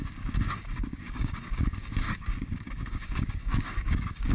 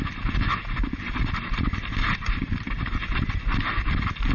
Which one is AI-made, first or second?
first